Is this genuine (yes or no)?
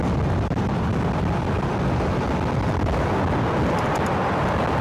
yes